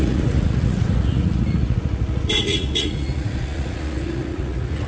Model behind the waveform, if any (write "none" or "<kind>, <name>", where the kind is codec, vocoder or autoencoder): vocoder, Vocos